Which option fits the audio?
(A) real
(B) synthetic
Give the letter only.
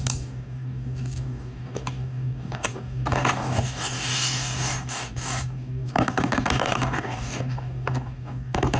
B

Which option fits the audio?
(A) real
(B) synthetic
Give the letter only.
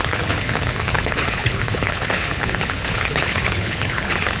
B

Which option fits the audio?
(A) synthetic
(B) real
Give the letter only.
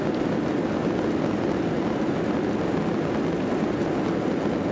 B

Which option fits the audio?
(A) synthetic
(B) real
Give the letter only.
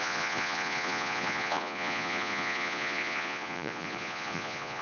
A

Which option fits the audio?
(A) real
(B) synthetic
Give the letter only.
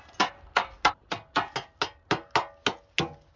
A